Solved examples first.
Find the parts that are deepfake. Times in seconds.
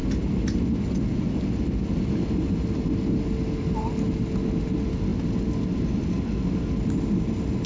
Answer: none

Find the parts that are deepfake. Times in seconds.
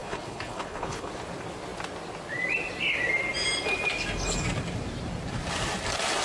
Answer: 0.0-1.1 (codec, HILCodec)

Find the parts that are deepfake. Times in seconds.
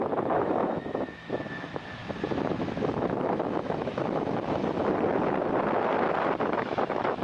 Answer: 0.0-2.0 (autoencoder, DAC-VAE); 2.5-4.6; 6.6-7.2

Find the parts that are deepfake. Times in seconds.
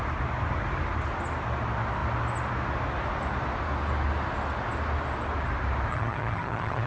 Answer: 5.9-6.9 (vocoder, HiFi-GAN)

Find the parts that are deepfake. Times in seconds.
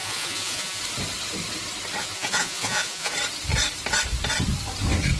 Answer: 0.0-0.8 (vocoder, Vocos); 2.0-3.1